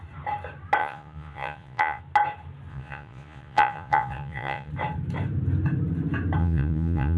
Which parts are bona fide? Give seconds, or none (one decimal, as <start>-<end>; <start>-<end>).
0.0-0.8; 2.0-2.7; 4.7-6.4